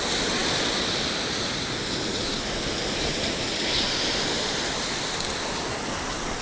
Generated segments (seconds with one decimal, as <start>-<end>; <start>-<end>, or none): none